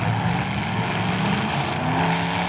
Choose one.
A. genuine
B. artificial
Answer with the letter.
A